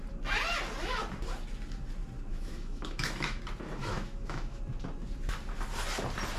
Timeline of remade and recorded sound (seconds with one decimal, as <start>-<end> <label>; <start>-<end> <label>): 0.0-2.3 recorded; 2.3-3.4 remade; 3.4-3.8 recorded; 3.8-4.6 remade; 4.6-6.4 recorded